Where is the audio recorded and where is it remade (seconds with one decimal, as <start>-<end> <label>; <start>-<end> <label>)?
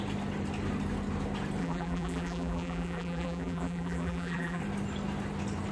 0.0-1.6 recorded; 1.6-4.6 remade; 4.6-5.7 recorded